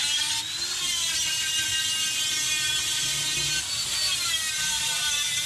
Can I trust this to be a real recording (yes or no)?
yes